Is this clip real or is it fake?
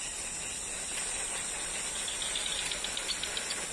real